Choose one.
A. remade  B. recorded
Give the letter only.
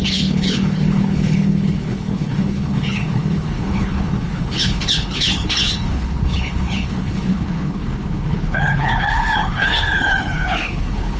A